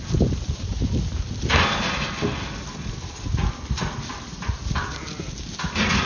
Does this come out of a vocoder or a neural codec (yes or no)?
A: no